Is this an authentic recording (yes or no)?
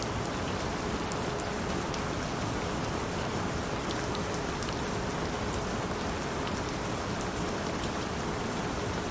yes